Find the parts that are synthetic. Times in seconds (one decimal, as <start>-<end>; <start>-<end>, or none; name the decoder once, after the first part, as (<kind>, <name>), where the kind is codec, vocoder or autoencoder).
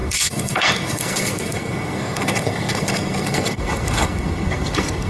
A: 0.0-5.1 (codec, SNAC)